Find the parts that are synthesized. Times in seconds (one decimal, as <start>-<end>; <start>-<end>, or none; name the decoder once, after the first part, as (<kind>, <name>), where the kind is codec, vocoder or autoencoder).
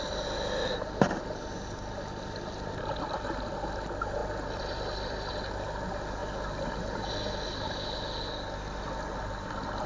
4.2-5.3 (vocoder, BigVGAN v2)